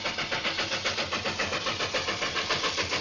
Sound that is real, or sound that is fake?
real